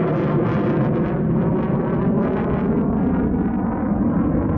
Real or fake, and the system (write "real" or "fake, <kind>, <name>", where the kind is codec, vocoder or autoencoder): real